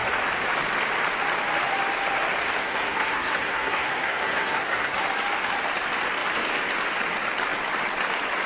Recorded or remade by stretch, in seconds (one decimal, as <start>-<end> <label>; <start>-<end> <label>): 0.0-2.6 recorded; 2.6-5.0 remade; 5.0-8.5 recorded